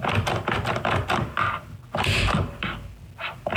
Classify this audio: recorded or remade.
recorded